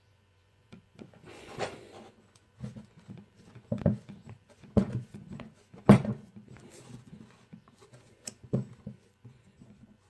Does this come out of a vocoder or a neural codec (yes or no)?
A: yes